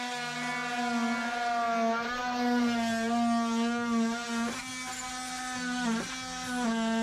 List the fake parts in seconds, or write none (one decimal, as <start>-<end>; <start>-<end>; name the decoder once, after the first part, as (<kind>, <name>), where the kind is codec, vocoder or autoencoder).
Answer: none